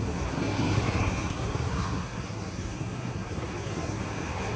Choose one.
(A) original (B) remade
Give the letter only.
B